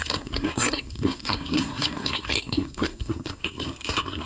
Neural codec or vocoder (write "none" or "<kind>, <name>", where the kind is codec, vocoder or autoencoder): codec, SNAC